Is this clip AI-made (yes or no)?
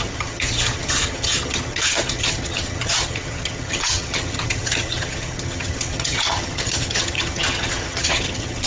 yes